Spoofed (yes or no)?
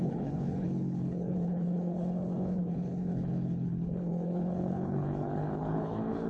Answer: yes